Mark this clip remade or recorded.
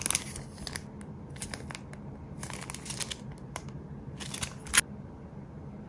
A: recorded